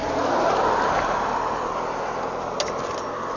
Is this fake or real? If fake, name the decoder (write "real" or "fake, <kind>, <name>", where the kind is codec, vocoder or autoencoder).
real